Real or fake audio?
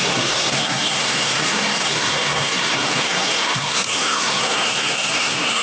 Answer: fake